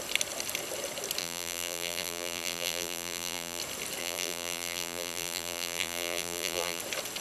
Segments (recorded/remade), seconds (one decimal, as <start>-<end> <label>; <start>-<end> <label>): 0.0-1.2 recorded; 1.2-3.6 remade; 3.6-4.0 recorded; 4.0-6.8 remade; 6.8-7.2 recorded